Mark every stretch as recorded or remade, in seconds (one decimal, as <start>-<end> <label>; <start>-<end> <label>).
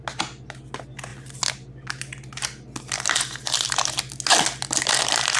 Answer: 0.0-5.4 recorded